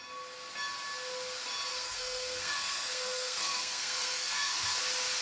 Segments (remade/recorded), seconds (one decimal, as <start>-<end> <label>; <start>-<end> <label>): 0.0-1.7 recorded; 1.7-4.8 remade; 4.8-5.2 recorded